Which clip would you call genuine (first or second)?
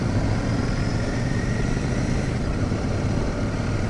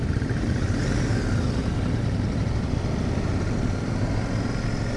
second